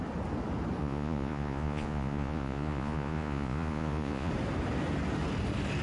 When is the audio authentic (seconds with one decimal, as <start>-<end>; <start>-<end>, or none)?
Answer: 0.0-0.8; 4.3-5.8